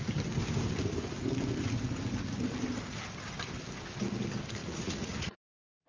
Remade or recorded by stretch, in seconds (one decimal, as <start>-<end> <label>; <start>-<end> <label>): 0.0-4.6 recorded; 4.6-5.9 remade